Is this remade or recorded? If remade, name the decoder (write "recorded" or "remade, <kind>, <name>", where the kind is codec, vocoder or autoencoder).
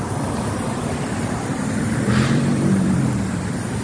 remade, vocoder, BigVGAN v2